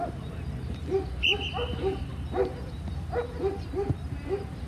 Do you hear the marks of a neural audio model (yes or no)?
yes